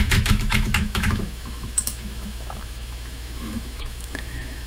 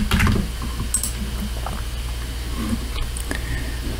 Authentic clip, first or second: second